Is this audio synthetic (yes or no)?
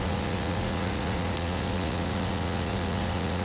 yes